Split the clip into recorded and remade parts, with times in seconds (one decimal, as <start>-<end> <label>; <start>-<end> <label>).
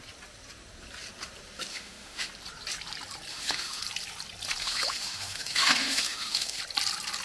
0.0-1.7 recorded; 1.7-2.3 remade; 2.3-3.3 recorded; 3.3-3.8 remade; 3.8-4.6 recorded; 4.6-6.6 remade; 6.6-7.2 recorded